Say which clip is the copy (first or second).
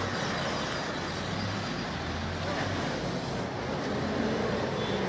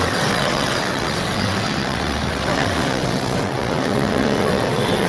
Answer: second